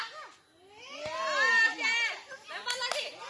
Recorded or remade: recorded